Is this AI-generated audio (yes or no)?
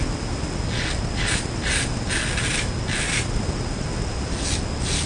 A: no